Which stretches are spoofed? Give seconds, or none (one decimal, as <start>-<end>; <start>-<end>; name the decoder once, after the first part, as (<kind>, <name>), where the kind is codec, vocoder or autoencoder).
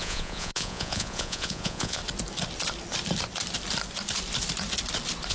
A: 0.0-2.0 (vocoder, Vocos)